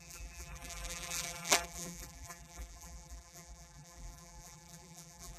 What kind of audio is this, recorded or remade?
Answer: remade